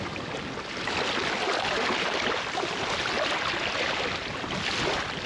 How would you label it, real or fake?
real